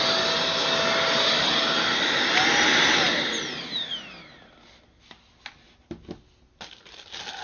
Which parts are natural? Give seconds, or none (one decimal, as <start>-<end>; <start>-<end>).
0.0-7.4